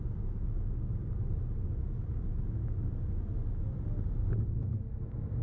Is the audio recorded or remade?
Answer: recorded